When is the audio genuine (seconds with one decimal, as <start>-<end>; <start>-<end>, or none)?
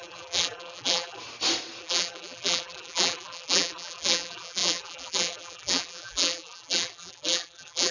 1.2-1.8